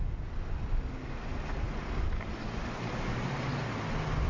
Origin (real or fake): real